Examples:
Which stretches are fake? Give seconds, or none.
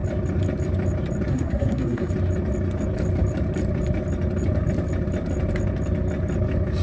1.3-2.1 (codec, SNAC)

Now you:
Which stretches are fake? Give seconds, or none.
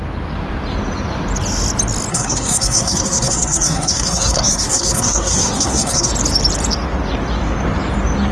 2.1-6.1 (codec, SNAC)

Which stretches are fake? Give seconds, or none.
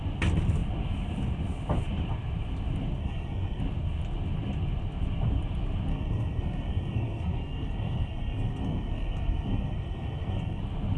3.0-3.6 (codec, SNAC); 5.9-10.6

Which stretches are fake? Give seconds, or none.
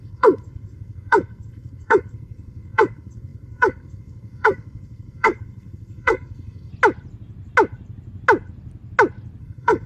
0.0-6.7 (codec, SNAC); 9.4-9.9